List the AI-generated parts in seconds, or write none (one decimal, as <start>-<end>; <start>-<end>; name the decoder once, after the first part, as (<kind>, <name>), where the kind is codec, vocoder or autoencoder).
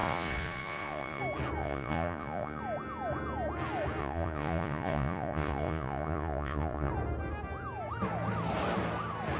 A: 0.0-1.2 (vocoder, Vocos); 1.6-2.6; 4.0-6.9